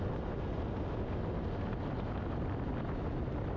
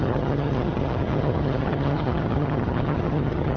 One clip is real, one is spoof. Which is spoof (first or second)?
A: second